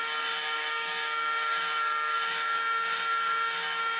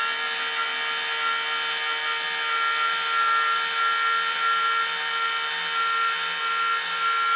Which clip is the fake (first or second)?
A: first